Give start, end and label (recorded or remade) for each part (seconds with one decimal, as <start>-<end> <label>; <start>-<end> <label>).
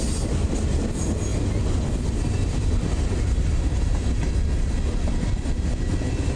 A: 0.0-6.4 recorded